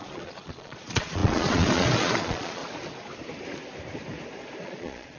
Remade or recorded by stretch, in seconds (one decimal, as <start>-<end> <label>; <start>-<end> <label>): 0.0-2.6 remade; 2.6-4.6 recorded; 4.6-5.2 remade